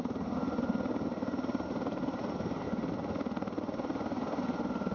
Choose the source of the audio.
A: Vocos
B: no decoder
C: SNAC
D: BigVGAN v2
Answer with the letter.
B